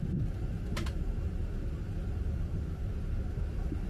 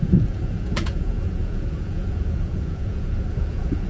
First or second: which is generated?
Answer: second